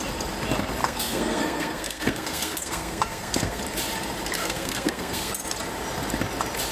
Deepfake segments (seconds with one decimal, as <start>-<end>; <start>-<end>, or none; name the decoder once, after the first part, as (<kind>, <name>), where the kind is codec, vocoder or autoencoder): 0.8-3.6 (codec, SNAC); 4.4-5.3